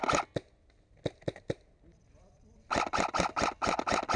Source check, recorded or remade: recorded